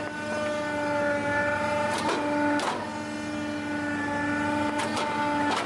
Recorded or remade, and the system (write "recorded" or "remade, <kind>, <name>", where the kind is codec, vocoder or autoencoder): recorded